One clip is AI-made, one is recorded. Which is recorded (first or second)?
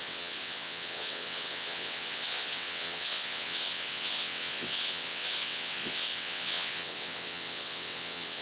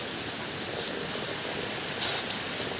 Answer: second